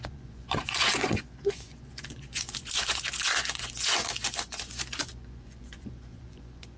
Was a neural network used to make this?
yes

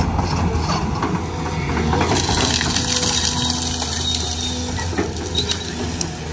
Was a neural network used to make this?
no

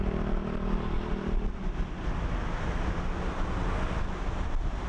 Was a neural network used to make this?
no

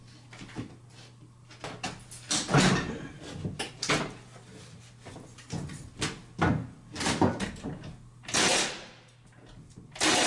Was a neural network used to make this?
no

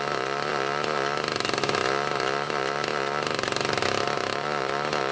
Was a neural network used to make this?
no